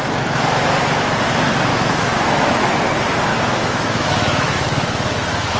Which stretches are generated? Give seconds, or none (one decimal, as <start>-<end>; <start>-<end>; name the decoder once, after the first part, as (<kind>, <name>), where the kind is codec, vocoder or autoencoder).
1.7-2.9 (autoencoder, DAC-VAE); 3.3-5.6